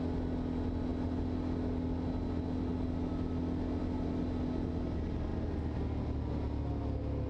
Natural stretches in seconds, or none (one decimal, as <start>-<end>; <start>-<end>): 0.0-7.3